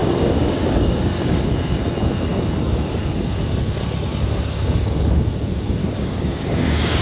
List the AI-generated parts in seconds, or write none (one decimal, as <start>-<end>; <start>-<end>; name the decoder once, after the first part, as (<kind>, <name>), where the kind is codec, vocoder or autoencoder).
0.0-1.5 (codec, DAC); 5.8-7.0